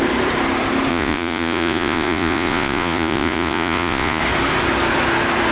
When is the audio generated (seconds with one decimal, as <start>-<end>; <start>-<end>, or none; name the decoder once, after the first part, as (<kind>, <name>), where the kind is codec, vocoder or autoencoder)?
0.9-4.2 (vocoder, Vocos)

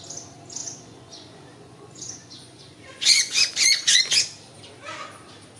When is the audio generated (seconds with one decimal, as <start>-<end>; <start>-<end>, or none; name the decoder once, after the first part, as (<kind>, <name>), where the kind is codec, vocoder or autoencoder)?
0.6-4.0 (vocoder, Vocos)

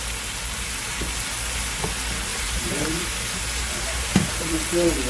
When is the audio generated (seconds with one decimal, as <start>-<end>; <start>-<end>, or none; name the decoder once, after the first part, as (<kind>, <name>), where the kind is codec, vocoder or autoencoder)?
2.3-4.6 (vocoder, BigVGAN v2)